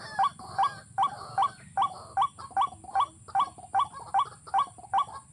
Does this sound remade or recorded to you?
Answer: recorded